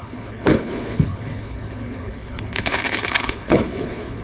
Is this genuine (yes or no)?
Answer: no